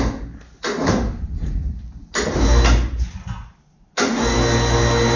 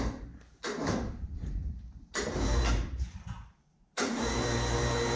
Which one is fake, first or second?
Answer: second